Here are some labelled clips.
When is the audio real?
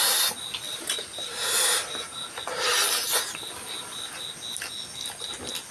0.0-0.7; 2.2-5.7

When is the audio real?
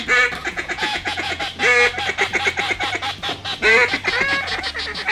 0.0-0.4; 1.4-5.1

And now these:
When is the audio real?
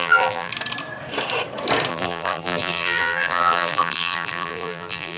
0.5-1.9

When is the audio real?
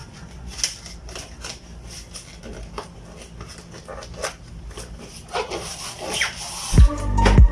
0.6-7.5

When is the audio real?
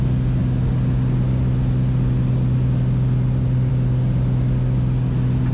0.0-5.5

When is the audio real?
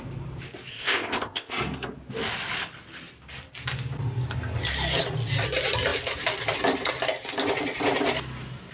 0.0-0.7; 1.5-8.7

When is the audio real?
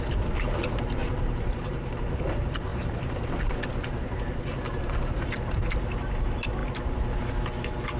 none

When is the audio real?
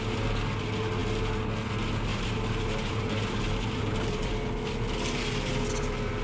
0.0-2.1; 4.3-6.2